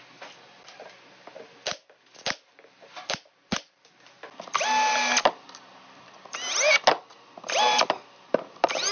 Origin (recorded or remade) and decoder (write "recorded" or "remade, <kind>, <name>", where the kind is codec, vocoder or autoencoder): recorded